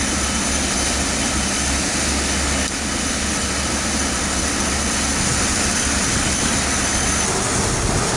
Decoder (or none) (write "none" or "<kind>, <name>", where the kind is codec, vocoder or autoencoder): none